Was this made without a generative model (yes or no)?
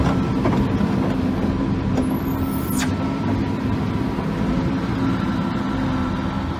yes